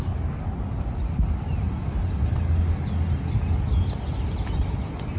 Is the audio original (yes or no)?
yes